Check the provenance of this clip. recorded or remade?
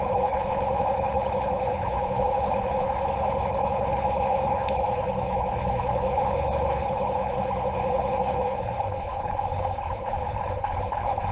remade